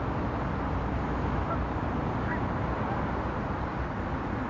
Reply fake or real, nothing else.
real